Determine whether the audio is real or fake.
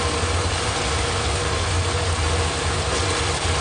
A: real